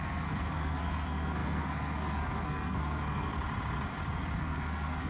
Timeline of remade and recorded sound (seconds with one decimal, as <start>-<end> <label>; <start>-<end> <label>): 0.0-3.3 remade; 3.3-4.4 recorded; 4.4-5.1 remade